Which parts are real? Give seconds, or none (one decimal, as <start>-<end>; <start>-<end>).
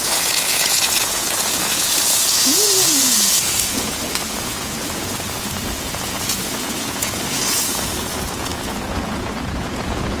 none